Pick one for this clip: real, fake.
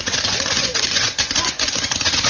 fake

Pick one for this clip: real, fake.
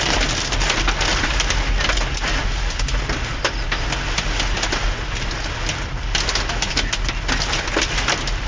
real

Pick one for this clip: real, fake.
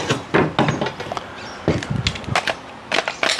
real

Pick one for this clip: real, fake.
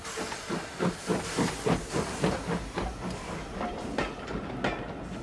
real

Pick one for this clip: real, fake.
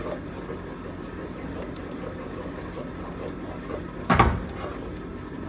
real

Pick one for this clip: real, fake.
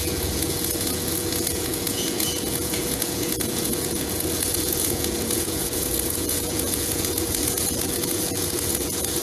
fake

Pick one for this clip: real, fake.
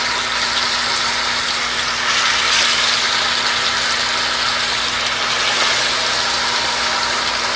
real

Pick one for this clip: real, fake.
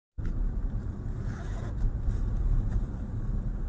real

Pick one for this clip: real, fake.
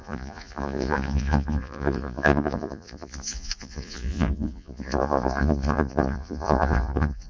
fake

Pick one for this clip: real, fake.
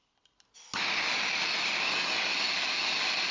real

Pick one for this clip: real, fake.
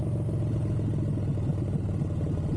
real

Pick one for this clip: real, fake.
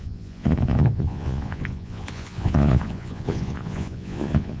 fake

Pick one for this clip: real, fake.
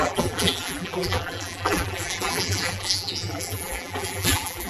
fake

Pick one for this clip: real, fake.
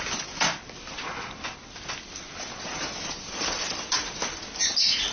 real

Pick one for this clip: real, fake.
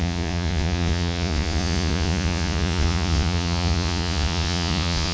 fake